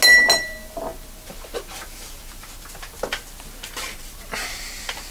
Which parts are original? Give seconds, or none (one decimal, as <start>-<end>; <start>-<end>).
0.0-5.1